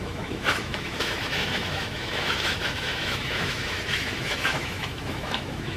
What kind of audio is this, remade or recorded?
remade